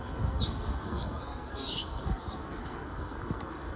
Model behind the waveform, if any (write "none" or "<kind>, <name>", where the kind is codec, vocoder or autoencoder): codec, SNAC